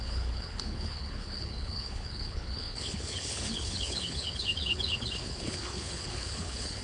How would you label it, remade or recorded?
remade